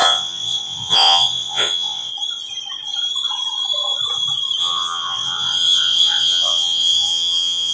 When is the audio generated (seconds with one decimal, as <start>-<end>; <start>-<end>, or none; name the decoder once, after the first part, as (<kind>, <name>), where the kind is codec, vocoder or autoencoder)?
0.0-2.1 (vocoder, WaveNeXt); 4.6-7.7